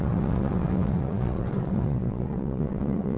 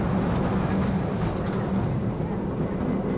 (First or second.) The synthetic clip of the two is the first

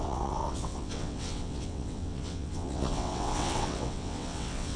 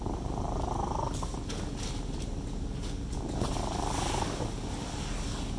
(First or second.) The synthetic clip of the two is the first